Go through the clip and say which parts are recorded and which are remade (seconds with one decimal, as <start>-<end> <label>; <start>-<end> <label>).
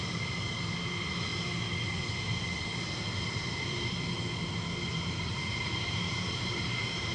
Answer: 0.0-4.9 recorded; 4.9-7.1 remade